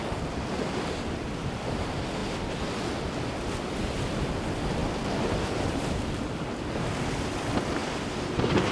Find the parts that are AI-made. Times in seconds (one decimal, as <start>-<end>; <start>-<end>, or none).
none